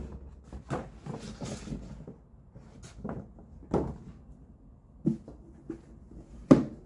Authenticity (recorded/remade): recorded